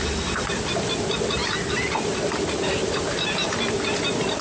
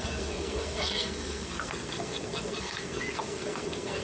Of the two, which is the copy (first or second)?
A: second